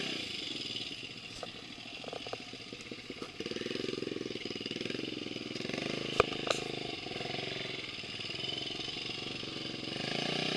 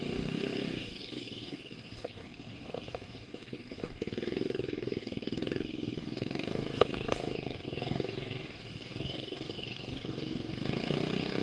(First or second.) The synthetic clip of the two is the second